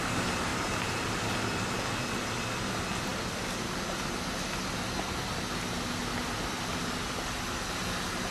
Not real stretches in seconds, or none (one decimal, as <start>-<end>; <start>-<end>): 0.5-1.8